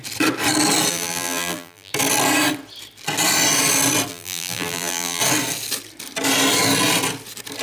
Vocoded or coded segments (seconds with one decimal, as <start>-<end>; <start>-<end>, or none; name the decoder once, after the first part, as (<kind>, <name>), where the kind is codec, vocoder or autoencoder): 0.9-1.9 (vocoder, BigVGAN v2); 4.1-5.2

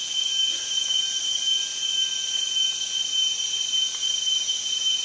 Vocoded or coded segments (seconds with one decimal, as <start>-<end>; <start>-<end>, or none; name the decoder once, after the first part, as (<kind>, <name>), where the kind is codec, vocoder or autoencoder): 0.5-1.4 (vocoder, BigVGAN v2); 4.3-5.0

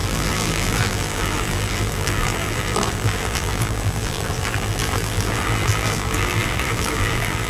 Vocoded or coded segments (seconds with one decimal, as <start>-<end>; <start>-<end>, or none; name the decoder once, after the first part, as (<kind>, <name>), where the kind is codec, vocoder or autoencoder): 0.0-7.5 (vocoder, BigVGAN v2)

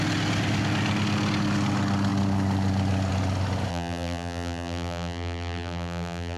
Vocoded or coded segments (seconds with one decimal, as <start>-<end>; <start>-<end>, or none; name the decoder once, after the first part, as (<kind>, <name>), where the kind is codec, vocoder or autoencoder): 3.7-6.4 (vocoder, BigVGAN v2)

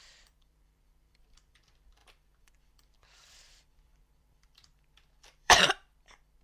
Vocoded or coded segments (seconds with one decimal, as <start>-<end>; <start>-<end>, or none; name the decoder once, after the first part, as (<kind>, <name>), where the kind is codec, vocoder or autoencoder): 0.0-6.4 (vocoder, BigVGAN v2)

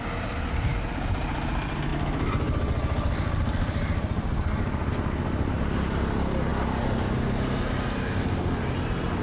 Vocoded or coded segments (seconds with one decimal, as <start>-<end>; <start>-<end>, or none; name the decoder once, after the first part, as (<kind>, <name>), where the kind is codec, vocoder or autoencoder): none